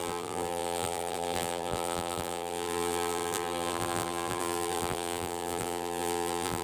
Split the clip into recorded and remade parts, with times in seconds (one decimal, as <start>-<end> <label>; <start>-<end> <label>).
0.0-6.6 remade